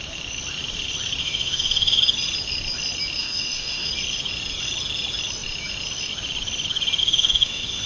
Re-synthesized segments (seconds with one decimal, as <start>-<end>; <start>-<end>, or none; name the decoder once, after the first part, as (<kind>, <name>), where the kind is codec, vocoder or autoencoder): 1.2-2.0 (autoencoder, DAC-VAE); 3.2-3.9; 7.0-7.9